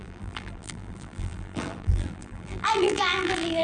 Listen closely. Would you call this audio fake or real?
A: fake